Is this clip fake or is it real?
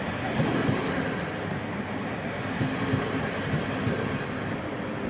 real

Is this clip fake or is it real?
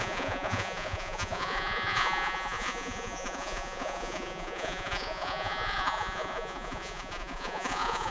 fake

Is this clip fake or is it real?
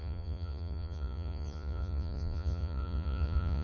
fake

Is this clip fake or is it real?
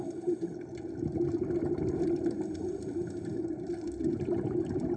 real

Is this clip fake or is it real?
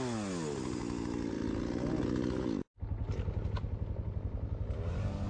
real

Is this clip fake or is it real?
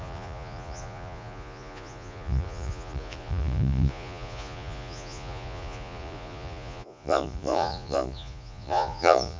fake